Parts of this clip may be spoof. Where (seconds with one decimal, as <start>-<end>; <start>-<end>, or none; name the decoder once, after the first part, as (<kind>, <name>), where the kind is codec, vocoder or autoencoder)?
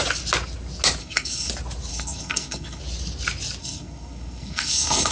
1.0-1.5 (codec, SNAC); 1.9-2.8; 3.6-5.1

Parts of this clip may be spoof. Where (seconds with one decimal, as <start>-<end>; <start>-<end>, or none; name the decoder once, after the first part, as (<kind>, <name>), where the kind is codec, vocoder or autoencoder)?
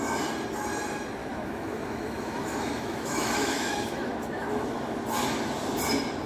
1.2-5.0 (autoencoder, DAC-VAE)